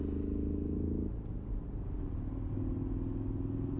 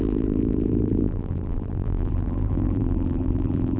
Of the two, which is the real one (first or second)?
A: first